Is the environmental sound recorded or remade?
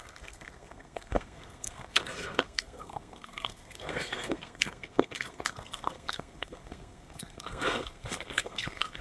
remade